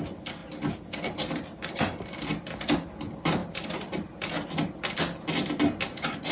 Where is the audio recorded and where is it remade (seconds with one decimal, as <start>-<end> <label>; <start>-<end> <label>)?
0.0-0.4 recorded; 0.4-2.3 remade; 2.3-3.4 recorded; 3.4-4.3 remade; 4.3-6.3 recorded